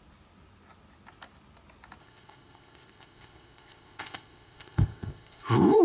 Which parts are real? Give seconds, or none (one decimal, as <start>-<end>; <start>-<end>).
0.0-2.0